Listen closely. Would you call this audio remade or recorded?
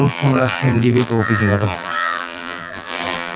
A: remade